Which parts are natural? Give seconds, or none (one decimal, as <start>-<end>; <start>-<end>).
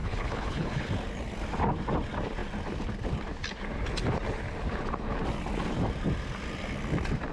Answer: 0.9-7.3